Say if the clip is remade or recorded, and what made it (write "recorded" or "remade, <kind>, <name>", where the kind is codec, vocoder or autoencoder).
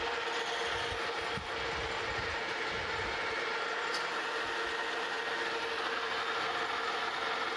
recorded